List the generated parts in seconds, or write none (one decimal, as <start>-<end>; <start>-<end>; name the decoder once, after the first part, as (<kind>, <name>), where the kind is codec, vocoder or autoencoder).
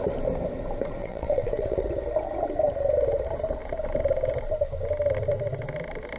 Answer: 1.0-1.9 (vocoder, WaveNeXt)